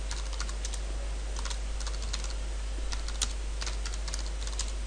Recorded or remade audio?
recorded